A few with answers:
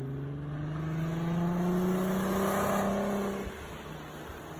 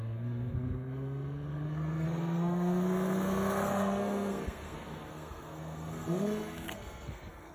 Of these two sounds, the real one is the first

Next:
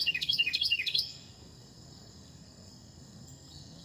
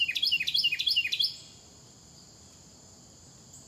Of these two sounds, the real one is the second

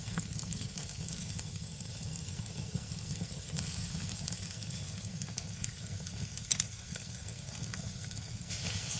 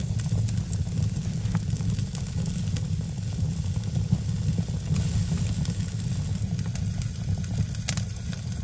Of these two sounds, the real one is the second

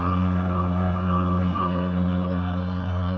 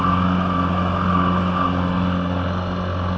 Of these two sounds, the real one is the second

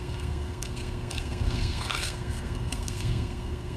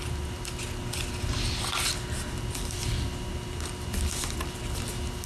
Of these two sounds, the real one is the second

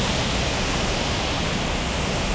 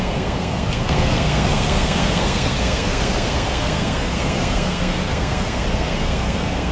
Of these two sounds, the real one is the first